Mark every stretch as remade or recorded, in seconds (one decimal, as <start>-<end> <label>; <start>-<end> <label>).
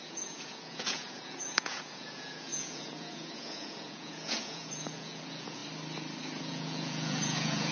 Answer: 0.0-5.6 remade; 5.6-6.4 recorded; 6.4-7.7 remade